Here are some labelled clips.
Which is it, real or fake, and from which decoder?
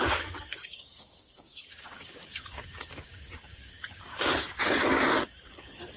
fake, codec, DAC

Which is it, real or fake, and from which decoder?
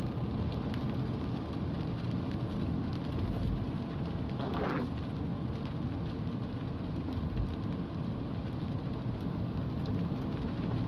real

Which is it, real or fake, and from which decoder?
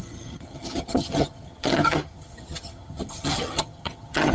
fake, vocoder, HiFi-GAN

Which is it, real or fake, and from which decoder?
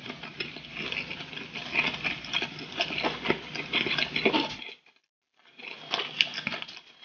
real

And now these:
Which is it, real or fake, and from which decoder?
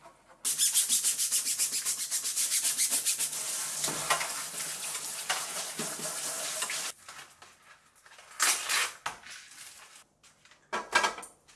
real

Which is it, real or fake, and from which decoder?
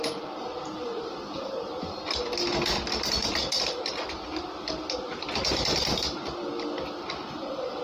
real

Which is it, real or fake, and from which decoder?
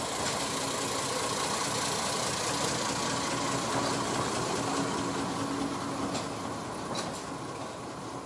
real